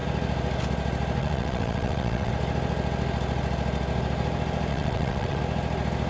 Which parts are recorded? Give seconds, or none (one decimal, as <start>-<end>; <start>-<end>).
0.0-1.2; 2.3-4.7; 5.4-6.1